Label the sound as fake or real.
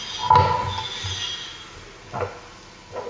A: real